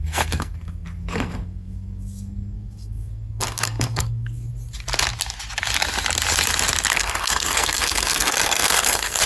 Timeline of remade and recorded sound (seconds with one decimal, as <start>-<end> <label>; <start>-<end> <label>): 0.0-4.5 remade; 4.5-6.9 recorded; 6.9-9.3 remade